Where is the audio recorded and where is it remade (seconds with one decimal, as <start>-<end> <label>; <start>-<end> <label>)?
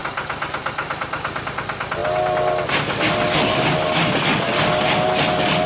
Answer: 0.0-5.7 recorded